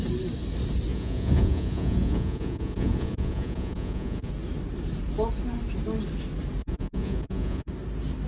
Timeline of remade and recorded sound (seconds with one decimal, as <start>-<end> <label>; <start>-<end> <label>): 0.0-0.9 recorded; 0.9-4.3 remade; 4.3-6.6 recorded; 6.6-7.7 remade; 7.7-8.3 recorded